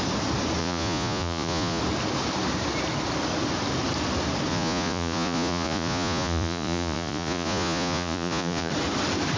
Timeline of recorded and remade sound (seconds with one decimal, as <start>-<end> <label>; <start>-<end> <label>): 0.0-0.6 recorded; 0.6-1.8 remade; 1.8-4.5 recorded; 4.5-8.7 remade; 8.7-9.4 recorded